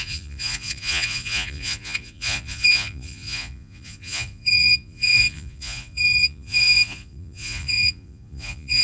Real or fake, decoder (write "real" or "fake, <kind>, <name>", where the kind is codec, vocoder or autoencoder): fake, vocoder, Vocos